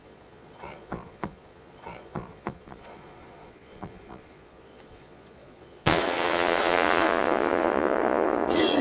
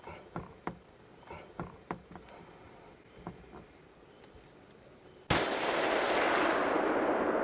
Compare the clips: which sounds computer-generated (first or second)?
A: first